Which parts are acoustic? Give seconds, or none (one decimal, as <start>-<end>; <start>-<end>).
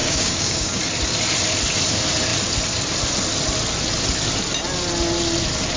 0.8-5.8